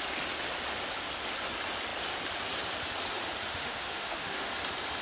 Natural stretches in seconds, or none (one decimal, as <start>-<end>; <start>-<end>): 0.0-3.5; 4.5-5.0